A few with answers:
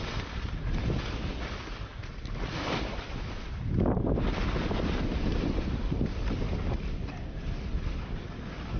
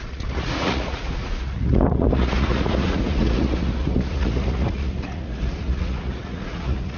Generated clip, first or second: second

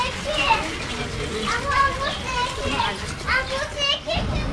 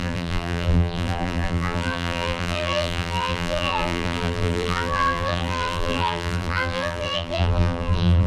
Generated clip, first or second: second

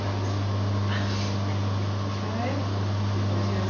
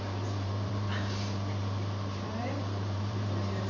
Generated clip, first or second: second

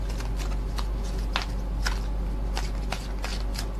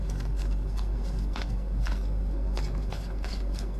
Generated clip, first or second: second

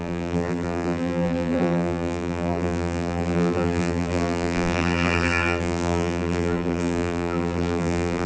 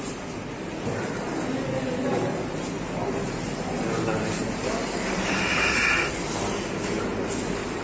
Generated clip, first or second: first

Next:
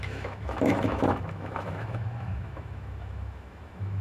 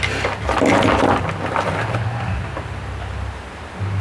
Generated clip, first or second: first